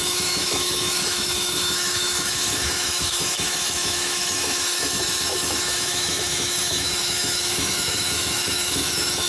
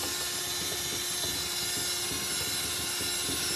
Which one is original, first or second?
second